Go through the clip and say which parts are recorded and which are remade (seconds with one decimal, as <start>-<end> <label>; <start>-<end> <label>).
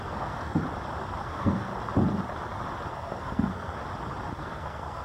0.0-0.6 remade; 0.6-1.2 recorded; 1.2-1.7 remade; 1.7-2.9 recorded; 2.9-3.8 remade; 3.8-4.4 recorded; 4.4-5.0 remade